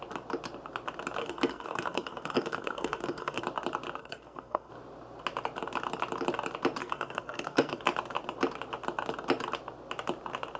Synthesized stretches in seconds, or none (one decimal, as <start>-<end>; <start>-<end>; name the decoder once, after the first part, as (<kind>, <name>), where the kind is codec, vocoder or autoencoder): 1.2-3.4 (codec, SNAC); 4.0-4.7; 6.8-7.8